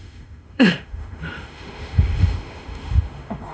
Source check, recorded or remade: remade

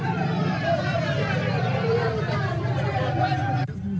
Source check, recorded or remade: remade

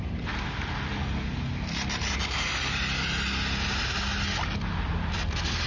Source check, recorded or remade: recorded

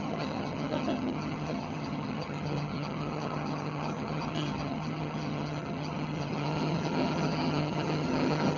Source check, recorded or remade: remade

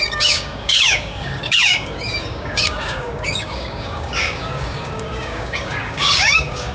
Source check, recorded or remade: remade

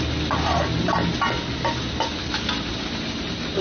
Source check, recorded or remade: recorded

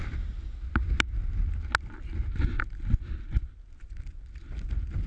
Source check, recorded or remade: recorded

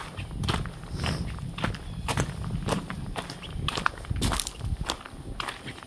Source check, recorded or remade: recorded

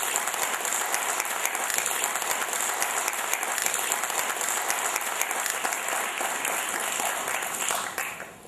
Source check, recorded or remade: recorded